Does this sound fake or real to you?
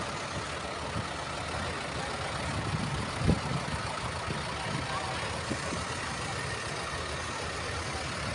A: real